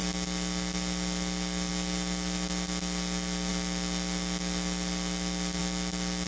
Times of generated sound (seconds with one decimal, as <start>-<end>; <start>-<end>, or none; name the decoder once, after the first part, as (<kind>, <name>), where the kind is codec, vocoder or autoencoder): none